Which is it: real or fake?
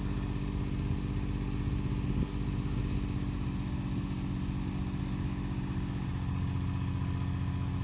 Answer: real